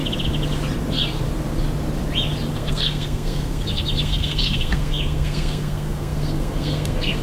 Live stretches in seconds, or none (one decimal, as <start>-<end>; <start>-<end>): 0.0-2.5